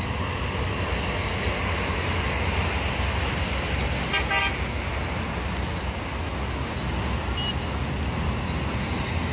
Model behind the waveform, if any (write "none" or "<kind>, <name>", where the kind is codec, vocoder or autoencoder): none